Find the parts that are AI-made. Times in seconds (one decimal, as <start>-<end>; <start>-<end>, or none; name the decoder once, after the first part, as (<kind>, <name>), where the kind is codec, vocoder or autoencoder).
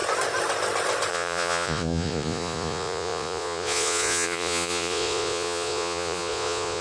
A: 1.1-6.8 (vocoder, Vocos)